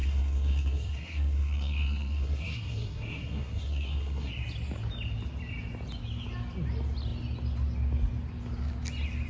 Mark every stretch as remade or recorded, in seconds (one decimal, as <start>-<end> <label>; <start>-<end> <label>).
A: 0.0-4.3 remade; 4.3-9.3 recorded